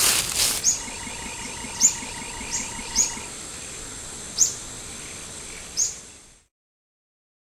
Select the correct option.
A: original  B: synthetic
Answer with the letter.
A